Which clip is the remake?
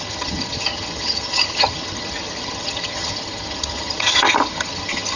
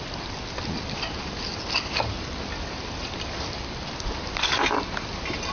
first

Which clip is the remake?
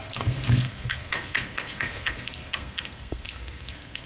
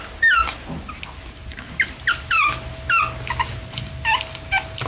first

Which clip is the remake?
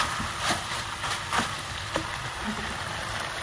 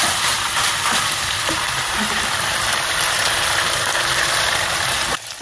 second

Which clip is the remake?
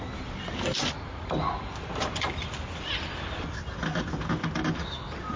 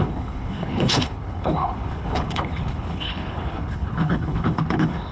second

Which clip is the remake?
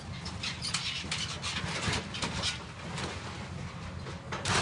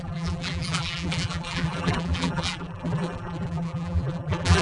second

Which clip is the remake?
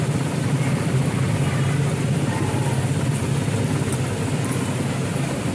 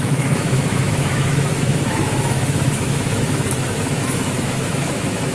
second